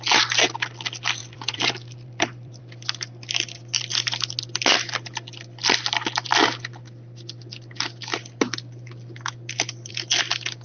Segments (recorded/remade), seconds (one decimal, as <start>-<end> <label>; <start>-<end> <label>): 0.0-1.2 recorded; 1.2-2.6 remade; 2.6-10.6 recorded